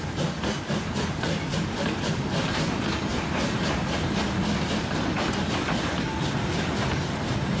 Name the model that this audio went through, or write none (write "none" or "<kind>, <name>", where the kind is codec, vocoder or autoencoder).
none